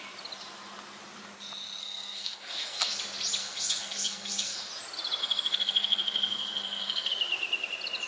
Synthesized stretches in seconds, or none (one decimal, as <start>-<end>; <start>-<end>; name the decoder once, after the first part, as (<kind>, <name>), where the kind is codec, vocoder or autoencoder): 1.8-3.0 (codec, SNAC); 3.4-4.7; 5.2-7.1

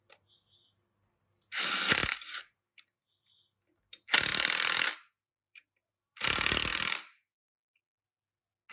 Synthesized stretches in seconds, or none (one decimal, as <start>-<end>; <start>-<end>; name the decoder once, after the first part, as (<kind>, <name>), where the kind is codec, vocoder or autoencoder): none

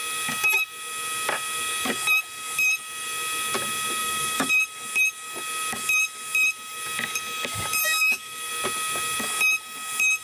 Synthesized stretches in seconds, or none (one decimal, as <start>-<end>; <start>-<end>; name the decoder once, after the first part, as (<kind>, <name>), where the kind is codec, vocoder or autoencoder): 4.0-4.5 (autoencoder, DAC-VAE); 7.8-8.5

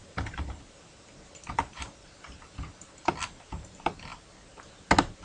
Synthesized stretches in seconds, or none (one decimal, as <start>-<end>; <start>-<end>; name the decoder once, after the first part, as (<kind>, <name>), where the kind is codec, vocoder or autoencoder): 0.0-3.1 (vocoder, BigVGAN v2)

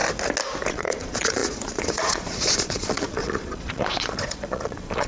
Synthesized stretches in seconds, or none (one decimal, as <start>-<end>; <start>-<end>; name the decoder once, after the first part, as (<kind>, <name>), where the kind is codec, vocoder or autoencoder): 0.7-5.1 (vocoder, Vocos)

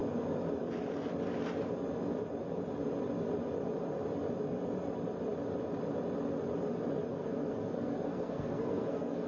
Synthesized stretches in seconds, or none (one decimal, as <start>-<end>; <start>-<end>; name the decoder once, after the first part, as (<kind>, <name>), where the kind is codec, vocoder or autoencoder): 7.1-9.3 (codec, SNAC)

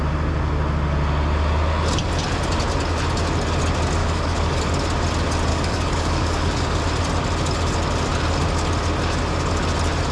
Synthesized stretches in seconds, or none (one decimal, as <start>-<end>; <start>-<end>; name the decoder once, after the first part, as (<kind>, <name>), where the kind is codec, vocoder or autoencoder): 4.0-4.6 (codec, DAC); 5.5-6.8

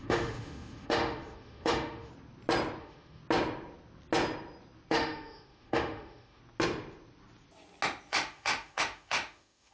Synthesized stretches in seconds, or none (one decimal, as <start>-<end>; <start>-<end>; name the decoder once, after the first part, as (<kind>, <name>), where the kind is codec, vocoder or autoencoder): 0.0-2.1 (autoencoder, DAC-VAE); 2.8-3.2; 4.9-6.4; 8.1-9.7